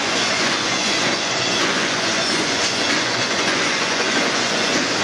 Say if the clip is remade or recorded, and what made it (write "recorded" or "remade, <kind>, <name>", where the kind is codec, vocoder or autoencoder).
remade, vocoder, Vocos